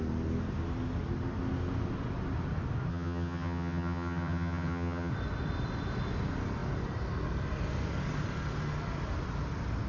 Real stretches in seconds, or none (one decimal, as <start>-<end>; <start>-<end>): 0.0-2.9; 5.1-9.9